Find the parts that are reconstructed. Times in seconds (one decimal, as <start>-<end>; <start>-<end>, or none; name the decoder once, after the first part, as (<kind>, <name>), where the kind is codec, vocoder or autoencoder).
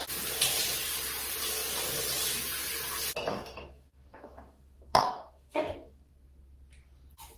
3.3-6.1 (codec, DAC)